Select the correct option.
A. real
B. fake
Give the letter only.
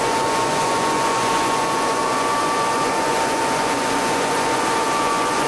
B